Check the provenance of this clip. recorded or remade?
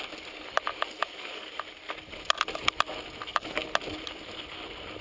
recorded